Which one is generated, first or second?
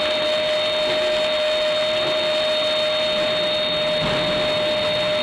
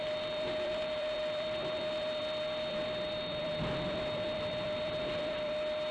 second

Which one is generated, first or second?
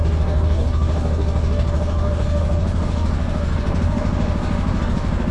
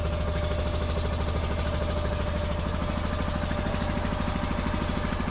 first